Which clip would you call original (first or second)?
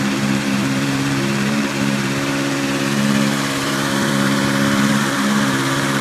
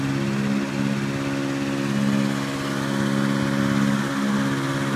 second